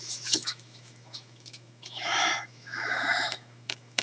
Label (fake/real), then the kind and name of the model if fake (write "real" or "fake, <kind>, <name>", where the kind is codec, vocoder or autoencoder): fake, autoencoder, DAC-VAE